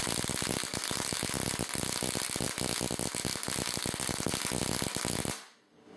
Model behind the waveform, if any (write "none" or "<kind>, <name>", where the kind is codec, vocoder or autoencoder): none